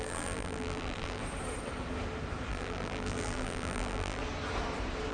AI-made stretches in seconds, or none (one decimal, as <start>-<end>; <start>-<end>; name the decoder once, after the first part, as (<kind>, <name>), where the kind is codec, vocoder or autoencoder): 0.0-1.2 (vocoder, BigVGAN v2); 2.5-4.2